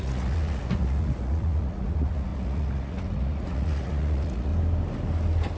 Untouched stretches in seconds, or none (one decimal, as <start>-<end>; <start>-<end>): 4.5-5.6